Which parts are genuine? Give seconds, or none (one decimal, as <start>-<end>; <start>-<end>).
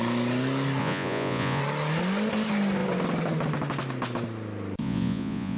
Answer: 0.0-0.8; 1.6-4.8